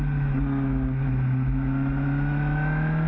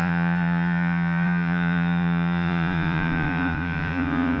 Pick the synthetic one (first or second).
second